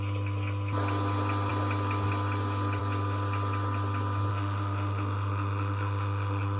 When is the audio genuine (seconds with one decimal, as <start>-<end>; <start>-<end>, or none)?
0.0-4.3

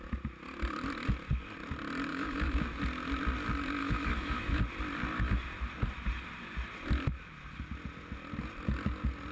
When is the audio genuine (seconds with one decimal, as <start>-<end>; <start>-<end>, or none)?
0.0-2.1; 2.8-3.8; 4.6-9.3

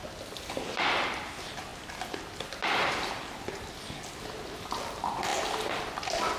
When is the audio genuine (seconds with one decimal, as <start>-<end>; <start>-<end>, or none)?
0.0-6.4

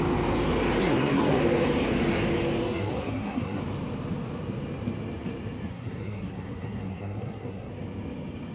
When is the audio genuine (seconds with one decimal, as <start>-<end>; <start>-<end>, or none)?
0.0-0.8; 1.4-2.6; 3.6-5.7; 7.7-8.5